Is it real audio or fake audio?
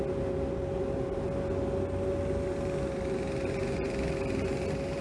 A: real